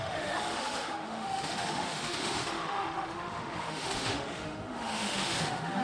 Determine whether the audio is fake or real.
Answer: fake